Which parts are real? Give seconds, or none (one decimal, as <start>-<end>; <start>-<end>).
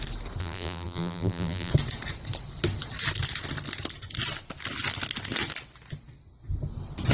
0.0-0.4; 1.7-7.1